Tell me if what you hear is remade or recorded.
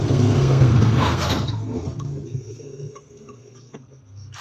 remade